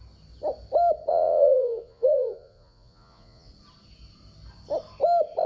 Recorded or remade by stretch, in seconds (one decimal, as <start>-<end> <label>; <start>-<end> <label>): 0.0-1.1 recorded; 1.1-3.5 remade; 3.5-5.5 recorded